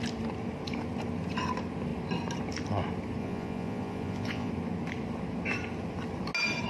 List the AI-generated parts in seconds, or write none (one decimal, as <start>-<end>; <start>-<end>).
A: 3.2-4.5

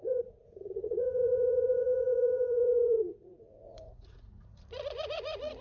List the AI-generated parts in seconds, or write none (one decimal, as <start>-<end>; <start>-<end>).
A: 0.0-5.6

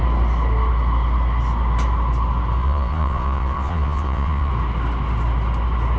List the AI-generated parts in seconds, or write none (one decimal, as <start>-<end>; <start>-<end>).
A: 2.6-4.5

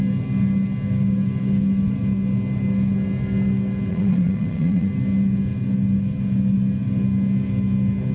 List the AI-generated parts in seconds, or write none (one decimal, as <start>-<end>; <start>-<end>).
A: 3.9-4.9

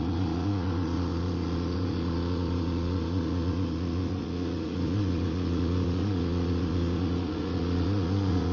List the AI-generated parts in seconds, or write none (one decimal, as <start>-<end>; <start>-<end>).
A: 0.0-8.5